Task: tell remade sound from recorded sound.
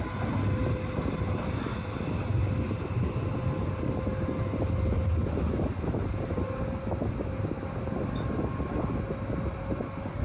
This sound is recorded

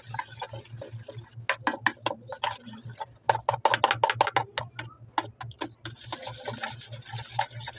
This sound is recorded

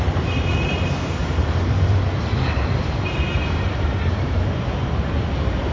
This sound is remade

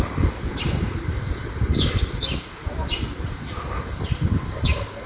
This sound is recorded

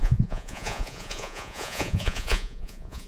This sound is remade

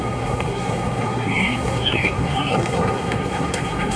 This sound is remade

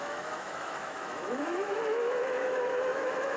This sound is remade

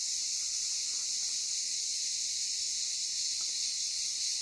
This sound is recorded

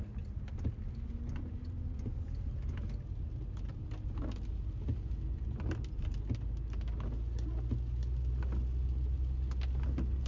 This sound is recorded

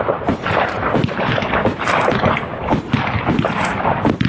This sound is recorded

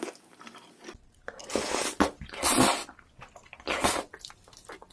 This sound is recorded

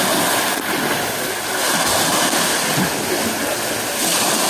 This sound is recorded